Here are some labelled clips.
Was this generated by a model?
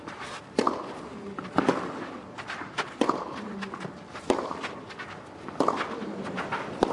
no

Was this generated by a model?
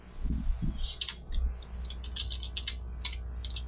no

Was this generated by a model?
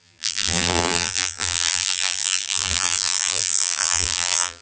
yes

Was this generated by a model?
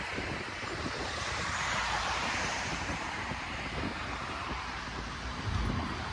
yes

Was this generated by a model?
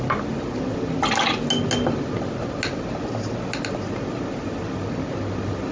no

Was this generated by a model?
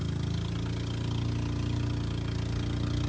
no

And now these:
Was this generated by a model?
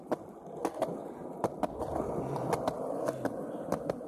no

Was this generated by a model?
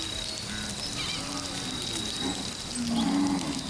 no